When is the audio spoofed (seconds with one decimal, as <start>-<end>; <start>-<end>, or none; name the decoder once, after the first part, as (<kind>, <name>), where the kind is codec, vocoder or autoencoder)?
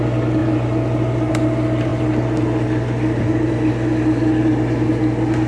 none